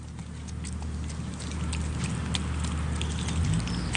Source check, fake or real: real